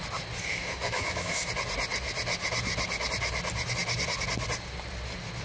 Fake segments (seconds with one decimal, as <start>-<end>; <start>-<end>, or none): 0.5-1.5